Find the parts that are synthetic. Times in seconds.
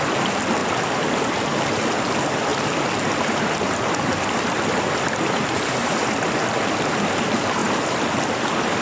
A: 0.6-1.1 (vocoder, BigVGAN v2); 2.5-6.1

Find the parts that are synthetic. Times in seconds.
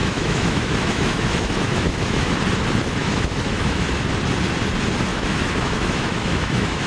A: 0.0-2.3 (autoencoder, DAC-VAE); 3.0-3.9; 5.1-6.9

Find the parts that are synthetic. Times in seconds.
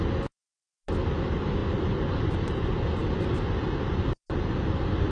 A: none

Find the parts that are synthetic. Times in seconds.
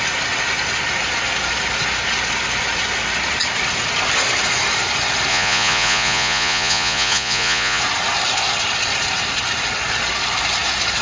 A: 5.3-7.8 (vocoder, Vocos)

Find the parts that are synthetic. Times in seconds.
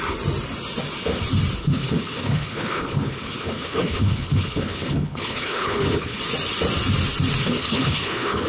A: 1.6-6.2 (codec, HILCodec); 7.4-8.5